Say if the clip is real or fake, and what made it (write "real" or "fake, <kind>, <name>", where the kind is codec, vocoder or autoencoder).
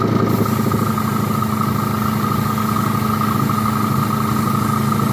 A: real